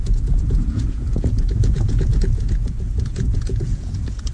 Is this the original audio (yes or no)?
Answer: no